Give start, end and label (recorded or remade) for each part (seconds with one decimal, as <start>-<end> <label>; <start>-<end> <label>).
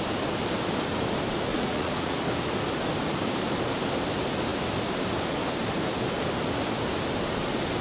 0.0-1.5 recorded; 1.5-2.2 remade; 2.2-7.8 recorded